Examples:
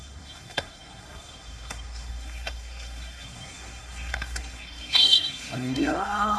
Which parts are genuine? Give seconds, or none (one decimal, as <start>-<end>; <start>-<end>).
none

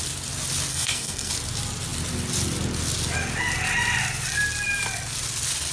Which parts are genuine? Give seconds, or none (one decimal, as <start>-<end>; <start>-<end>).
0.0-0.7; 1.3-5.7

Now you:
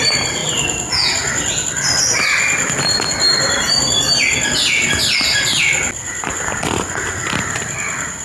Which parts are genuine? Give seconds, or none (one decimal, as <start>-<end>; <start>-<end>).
0.0-8.2

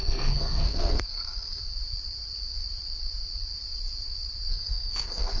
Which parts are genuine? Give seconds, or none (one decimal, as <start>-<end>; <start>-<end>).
1.6-4.5

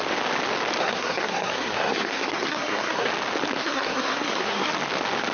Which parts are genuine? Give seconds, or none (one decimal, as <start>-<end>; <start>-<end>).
0.0-0.8; 3.1-3.6; 4.7-5.3